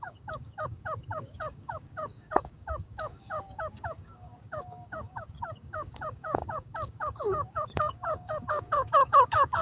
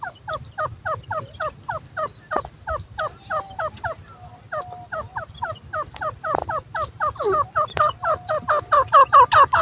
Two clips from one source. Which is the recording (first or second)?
second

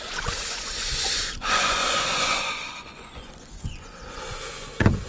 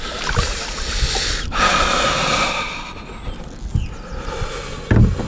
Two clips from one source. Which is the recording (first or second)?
second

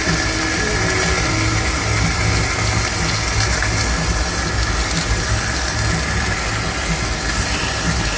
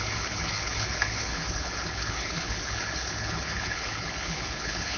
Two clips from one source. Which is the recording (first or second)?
first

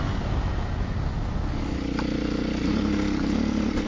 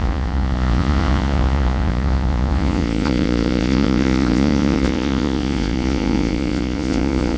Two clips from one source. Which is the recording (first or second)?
first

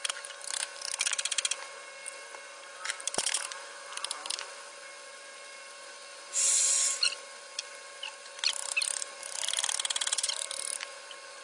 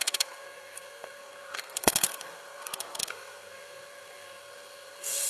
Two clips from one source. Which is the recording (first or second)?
first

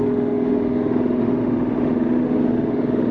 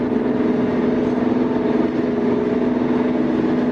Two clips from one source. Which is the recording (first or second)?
second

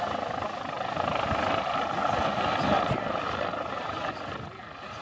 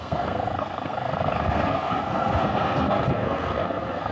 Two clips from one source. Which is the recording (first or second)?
first